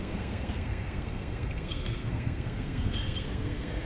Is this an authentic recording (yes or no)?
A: no